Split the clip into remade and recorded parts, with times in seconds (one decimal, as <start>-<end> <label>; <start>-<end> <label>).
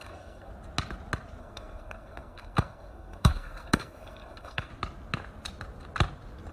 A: 0.0-0.5 remade; 0.5-1.4 recorded; 1.4-4.7 remade; 4.7-6.5 recorded